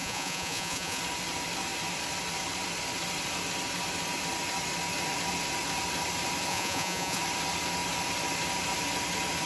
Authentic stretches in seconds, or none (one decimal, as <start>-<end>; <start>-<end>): 1.0-6.5; 7.2-9.5